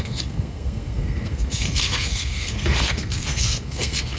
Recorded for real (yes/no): no